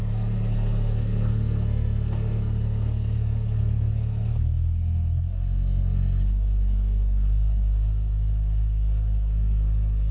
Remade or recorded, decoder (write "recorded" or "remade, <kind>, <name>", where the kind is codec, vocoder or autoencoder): remade, codec, SNAC